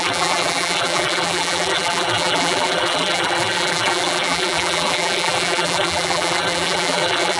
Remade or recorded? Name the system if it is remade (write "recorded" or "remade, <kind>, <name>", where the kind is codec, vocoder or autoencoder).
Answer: remade, vocoder, BigVGAN v2